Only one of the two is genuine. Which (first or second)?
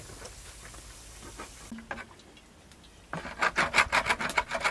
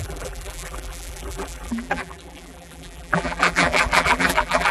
first